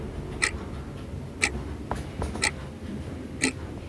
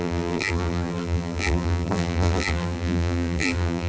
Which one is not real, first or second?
second